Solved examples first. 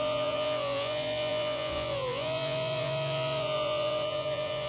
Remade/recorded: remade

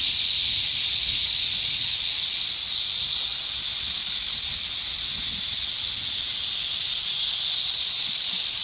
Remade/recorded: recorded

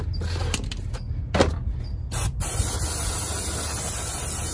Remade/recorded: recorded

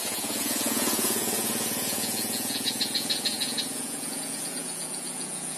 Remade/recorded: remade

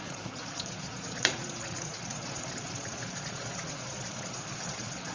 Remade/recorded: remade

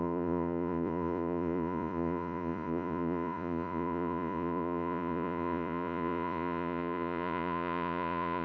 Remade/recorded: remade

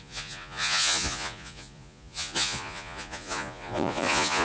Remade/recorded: remade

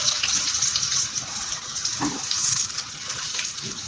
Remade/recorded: remade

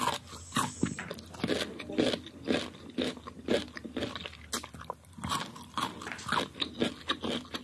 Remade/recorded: recorded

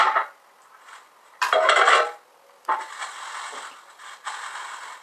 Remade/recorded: recorded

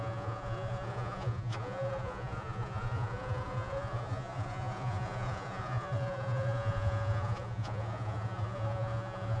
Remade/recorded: remade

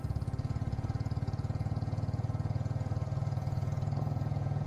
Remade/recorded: remade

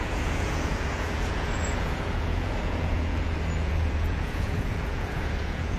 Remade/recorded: remade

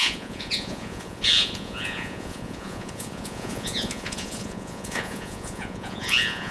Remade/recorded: remade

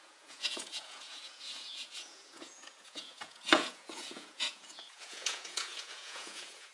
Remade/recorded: remade